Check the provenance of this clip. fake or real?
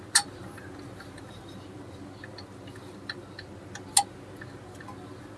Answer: real